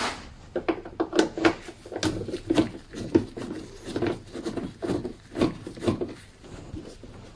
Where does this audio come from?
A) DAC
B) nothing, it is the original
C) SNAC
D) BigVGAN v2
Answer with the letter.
B